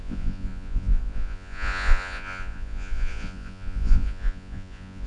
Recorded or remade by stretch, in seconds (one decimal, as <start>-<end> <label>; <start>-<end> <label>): 0.0-5.1 remade